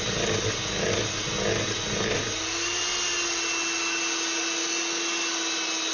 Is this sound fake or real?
real